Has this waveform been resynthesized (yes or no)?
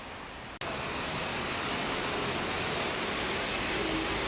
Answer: no